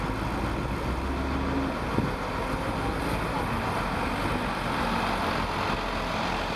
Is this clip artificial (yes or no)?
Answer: no